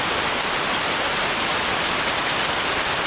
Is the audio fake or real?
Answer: real